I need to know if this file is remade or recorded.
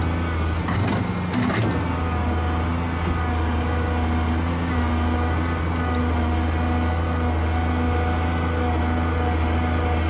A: recorded